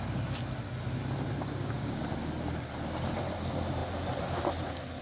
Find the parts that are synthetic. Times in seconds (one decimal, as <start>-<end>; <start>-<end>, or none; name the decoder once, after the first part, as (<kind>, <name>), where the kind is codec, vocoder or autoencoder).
1.4-2.0 (codec, DAC)